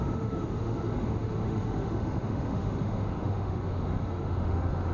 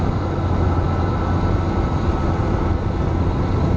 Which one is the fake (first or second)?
first